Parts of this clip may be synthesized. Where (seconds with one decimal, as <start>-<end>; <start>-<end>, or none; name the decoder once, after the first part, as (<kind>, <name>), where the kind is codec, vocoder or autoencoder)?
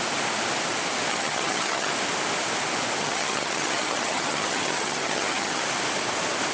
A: 1.1-1.9 (vocoder, HiFi-GAN); 3.0-5.6